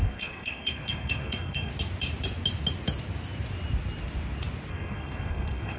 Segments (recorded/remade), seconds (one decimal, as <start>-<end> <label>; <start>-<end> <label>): 0.0-1.7 remade; 1.7-4.7 recorded; 4.7-5.8 remade